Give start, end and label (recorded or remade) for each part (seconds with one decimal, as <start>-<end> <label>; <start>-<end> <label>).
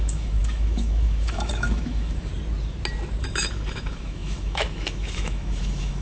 0.0-2.3 remade; 2.3-3.2 recorded; 3.2-6.0 remade